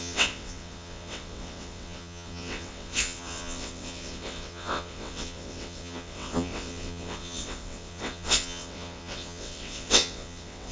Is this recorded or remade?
remade